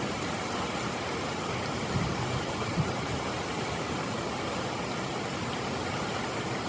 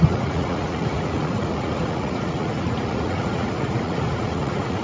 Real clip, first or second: first